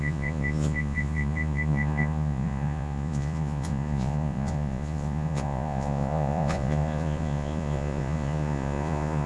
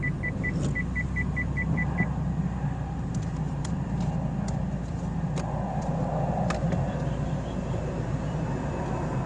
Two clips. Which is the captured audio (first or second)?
second